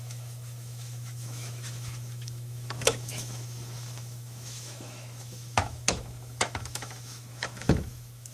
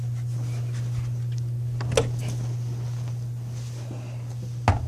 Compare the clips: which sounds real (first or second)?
second